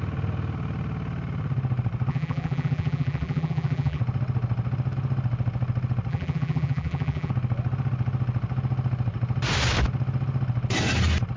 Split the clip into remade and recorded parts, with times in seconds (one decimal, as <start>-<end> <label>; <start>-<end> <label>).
0.0-2.1 recorded; 2.1-4.0 remade; 4.0-6.1 recorded; 6.1-7.3 remade; 7.3-11.4 recorded